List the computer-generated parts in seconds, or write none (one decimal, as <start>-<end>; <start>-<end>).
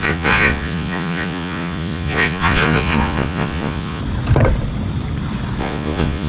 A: 0.0-4.0; 5.6-6.3